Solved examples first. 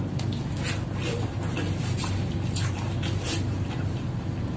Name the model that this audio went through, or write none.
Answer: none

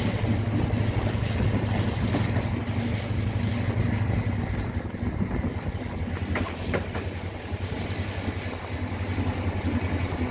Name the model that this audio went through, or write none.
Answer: none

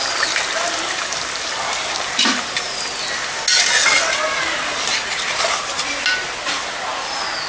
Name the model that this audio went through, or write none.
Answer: none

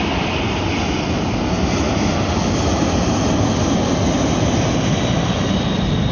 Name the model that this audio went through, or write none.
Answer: none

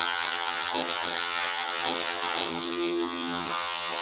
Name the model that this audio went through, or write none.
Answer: vocoder, HiFi-GAN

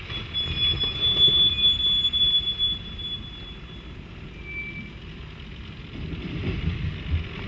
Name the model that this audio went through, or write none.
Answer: none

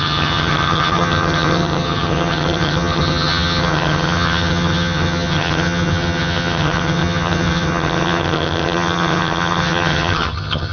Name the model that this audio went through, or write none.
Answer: vocoder, HiFi-GAN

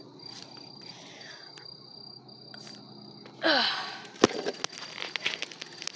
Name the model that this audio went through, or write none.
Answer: none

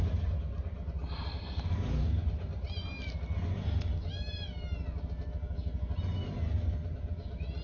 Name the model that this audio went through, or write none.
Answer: none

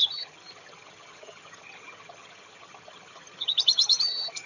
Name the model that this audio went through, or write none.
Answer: vocoder, HiFi-GAN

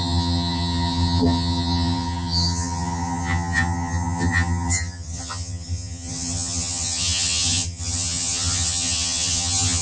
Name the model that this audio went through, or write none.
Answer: vocoder, HiFi-GAN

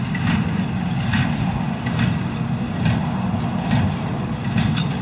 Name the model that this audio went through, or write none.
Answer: none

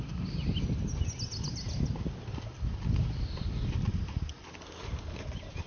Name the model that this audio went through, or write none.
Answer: none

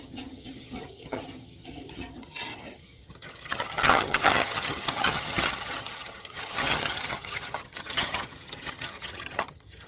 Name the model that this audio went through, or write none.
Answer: vocoder, HiFi-GAN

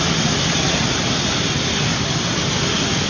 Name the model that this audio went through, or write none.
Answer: none